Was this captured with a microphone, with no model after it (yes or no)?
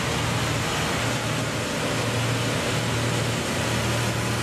yes